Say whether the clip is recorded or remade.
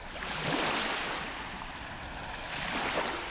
recorded